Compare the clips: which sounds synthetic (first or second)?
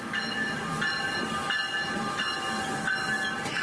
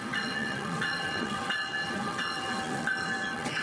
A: second